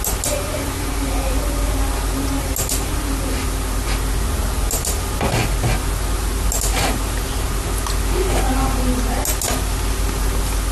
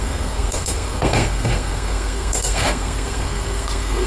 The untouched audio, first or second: first